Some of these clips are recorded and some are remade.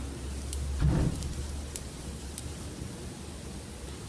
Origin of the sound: recorded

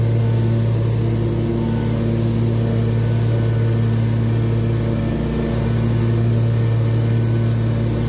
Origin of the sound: recorded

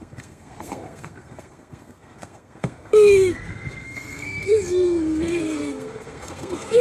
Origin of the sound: remade